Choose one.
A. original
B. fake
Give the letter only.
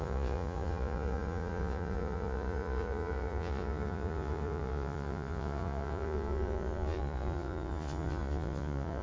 B